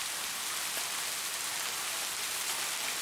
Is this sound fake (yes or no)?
no